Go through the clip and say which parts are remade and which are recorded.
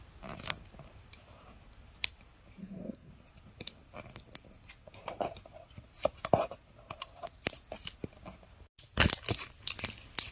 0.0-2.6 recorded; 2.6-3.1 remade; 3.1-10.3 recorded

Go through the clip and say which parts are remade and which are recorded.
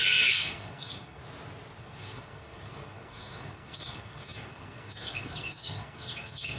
0.0-1.2 remade; 1.2-1.8 recorded; 1.8-6.6 remade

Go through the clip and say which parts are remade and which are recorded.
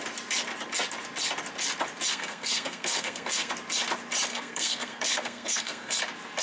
0.0-2.1 recorded; 2.1-3.5 remade; 3.5-4.3 recorded; 4.3-6.0 remade; 6.0-6.4 recorded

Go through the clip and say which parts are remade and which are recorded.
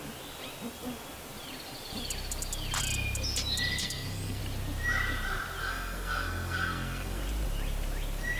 0.0-3.8 recorded; 3.8-4.4 remade; 4.4-5.6 recorded; 5.6-7.2 remade; 7.2-8.4 recorded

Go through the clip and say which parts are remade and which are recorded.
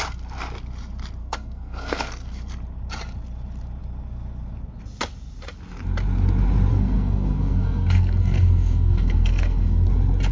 0.0-1.2 recorded; 1.2-2.5 remade; 2.5-6.7 recorded; 6.7-9.9 remade; 9.9-10.3 recorded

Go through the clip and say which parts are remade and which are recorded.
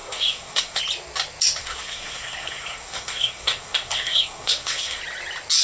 0.0-0.8 remade; 0.8-1.6 recorded; 1.6-5.0 remade; 5.0-5.6 recorded